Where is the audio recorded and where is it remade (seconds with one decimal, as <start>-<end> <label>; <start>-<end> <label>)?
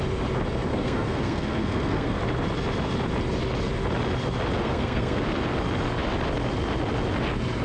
0.0-0.7 recorded; 0.7-2.2 remade; 2.2-4.6 recorded; 4.6-5.2 remade; 5.2-7.6 recorded